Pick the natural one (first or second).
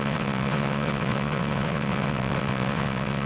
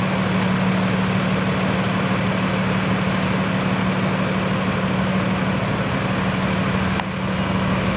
second